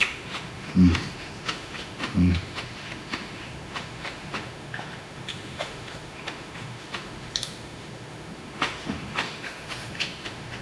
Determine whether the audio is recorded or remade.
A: remade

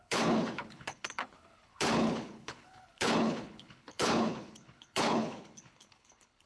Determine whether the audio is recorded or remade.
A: remade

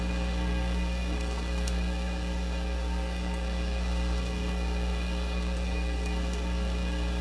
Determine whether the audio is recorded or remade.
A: remade